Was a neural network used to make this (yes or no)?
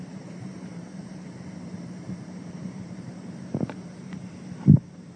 yes